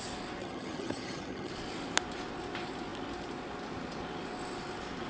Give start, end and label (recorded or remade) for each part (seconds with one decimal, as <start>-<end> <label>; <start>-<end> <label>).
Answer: 0.0-0.4 recorded; 0.4-1.5 remade; 1.5-5.1 recorded